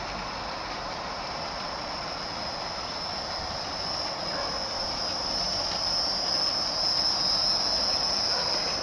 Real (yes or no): yes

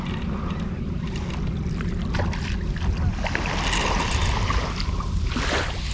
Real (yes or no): yes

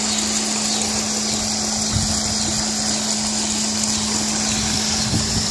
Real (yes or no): yes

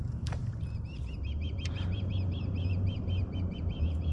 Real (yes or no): no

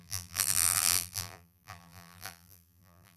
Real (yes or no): no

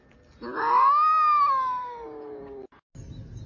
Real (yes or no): yes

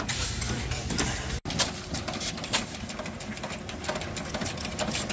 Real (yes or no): yes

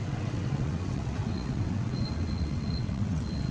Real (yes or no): no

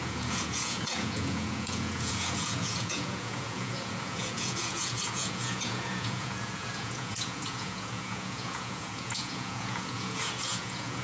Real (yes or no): no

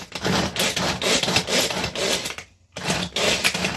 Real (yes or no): yes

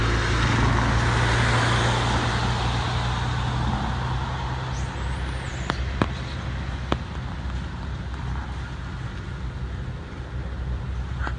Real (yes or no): yes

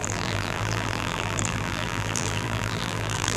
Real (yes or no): no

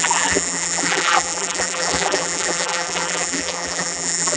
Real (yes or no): no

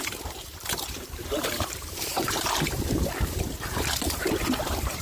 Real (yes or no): no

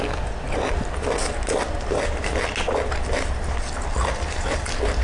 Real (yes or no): yes